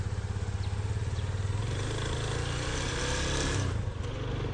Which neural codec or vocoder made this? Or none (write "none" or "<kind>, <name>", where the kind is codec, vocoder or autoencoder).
none